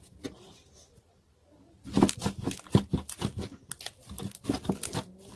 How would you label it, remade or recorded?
recorded